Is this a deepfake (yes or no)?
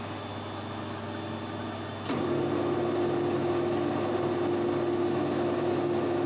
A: no